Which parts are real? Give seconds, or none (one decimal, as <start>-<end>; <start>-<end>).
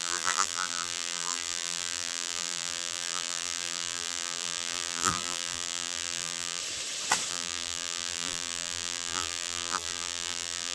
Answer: 6.6-7.3